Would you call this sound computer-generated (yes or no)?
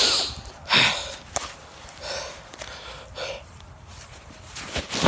no